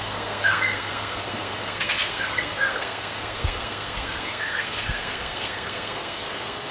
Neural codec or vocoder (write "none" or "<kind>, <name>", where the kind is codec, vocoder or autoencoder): codec, SNAC